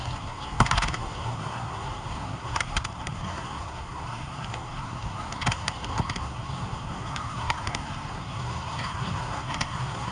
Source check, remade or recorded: remade